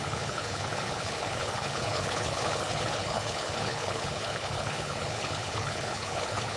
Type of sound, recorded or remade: remade